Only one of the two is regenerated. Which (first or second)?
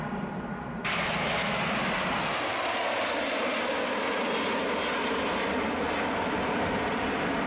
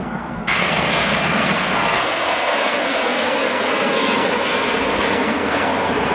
second